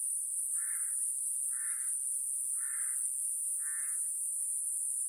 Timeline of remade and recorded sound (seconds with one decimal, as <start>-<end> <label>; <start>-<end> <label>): 0.0-3.3 recorded; 3.3-4.3 remade; 4.3-5.1 recorded